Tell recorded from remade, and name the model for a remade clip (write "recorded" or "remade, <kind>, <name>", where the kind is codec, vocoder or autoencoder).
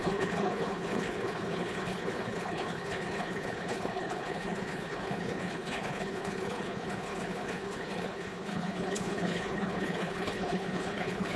remade, codec, HILCodec